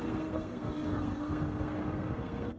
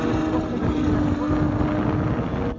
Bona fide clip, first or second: second